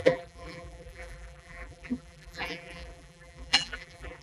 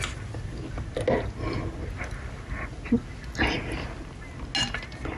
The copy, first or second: first